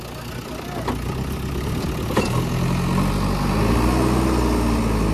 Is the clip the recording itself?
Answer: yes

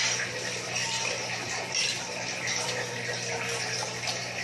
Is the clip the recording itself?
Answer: yes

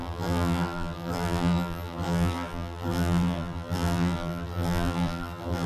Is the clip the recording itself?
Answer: no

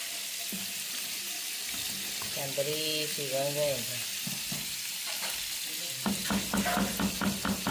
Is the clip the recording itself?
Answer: yes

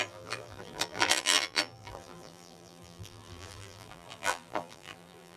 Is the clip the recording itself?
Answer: no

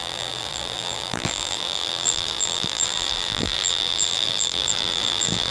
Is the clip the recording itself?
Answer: no